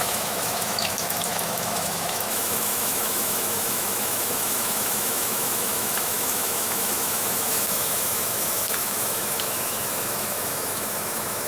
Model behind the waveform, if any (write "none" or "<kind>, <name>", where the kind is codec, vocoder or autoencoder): autoencoder, DAC-VAE